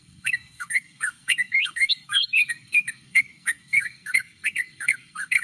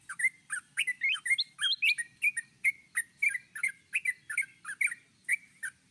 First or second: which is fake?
first